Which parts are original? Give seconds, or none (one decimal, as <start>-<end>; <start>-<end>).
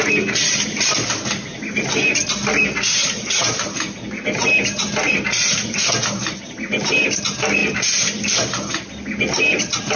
0.0-10.0